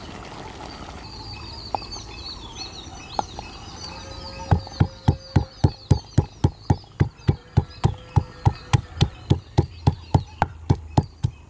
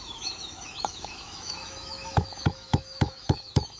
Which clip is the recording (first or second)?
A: first